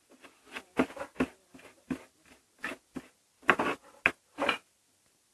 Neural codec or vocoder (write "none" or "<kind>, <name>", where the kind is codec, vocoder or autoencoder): none